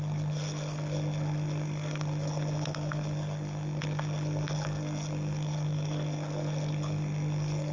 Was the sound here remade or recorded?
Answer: remade